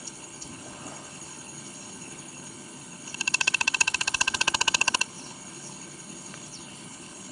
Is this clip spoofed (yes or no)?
yes